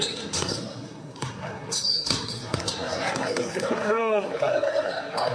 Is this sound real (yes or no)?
no